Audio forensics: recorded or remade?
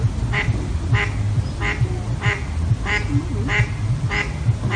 recorded